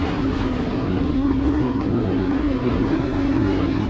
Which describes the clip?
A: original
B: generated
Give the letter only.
B